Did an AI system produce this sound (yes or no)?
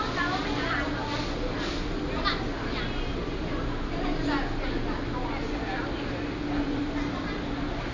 no